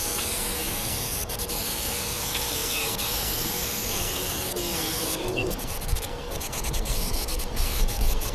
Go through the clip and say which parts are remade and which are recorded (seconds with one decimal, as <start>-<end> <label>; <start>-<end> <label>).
0.0-8.3 remade